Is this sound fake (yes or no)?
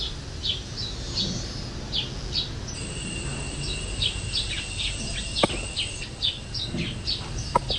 no